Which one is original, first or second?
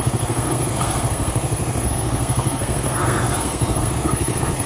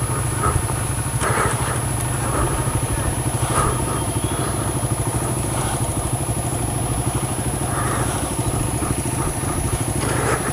second